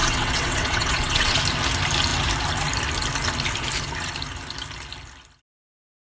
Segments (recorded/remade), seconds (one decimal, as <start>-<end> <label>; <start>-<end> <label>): 0.0-1.4 remade; 1.4-6.0 recorded